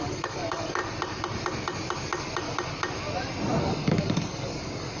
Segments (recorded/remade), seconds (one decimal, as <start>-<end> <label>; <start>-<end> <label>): 0.0-0.8 remade; 0.8-3.6 recorded; 3.6-5.0 remade